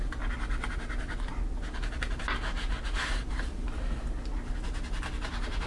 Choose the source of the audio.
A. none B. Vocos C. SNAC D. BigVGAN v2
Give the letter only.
A